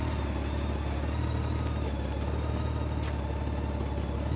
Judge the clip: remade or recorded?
recorded